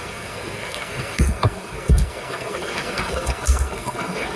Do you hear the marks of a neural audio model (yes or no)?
yes